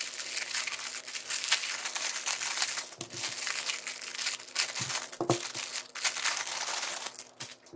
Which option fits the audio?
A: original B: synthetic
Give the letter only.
A